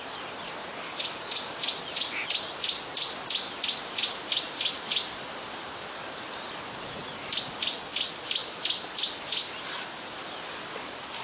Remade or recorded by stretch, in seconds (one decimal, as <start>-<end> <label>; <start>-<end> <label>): 0.0-11.2 recorded